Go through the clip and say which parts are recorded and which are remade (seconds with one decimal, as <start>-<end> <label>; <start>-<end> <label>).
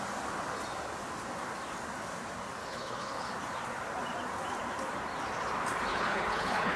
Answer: 0.0-2.6 recorded; 2.6-3.3 remade; 3.3-5.9 recorded; 5.9-6.8 remade